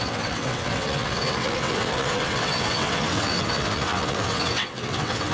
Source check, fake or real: fake